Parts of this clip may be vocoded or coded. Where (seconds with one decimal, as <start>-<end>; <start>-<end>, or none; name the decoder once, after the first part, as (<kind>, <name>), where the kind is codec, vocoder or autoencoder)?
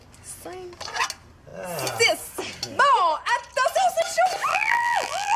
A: 4.5-5.4 (vocoder, BigVGAN v2)